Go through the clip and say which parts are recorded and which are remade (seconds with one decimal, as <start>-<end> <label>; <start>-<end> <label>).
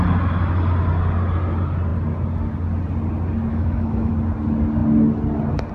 0.0-3.5 recorded; 3.5-4.1 remade; 4.1-5.7 recorded